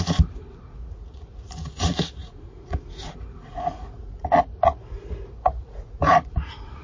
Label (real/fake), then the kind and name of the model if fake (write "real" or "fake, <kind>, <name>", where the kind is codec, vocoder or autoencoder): fake, vocoder, Vocos